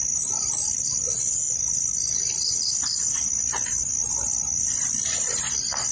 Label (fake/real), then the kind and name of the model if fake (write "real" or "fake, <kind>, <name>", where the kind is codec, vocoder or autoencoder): real